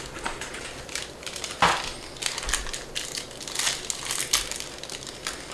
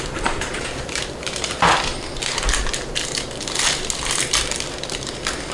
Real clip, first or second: first